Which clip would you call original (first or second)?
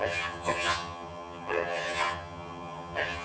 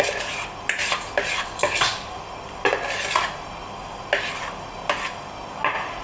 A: second